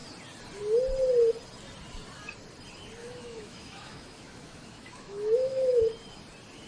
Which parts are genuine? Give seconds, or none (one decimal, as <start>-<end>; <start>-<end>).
0.0-3.0; 5.8-6.7